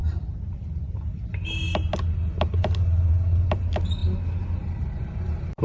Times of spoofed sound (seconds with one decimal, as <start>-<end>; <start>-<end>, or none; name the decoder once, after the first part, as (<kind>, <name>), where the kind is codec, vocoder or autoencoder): none